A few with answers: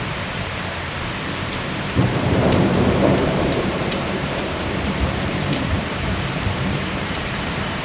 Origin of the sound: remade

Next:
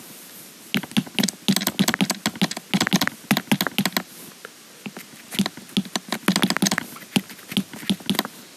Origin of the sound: recorded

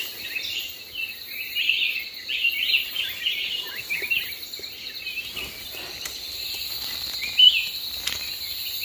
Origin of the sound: recorded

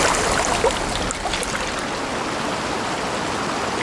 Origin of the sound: recorded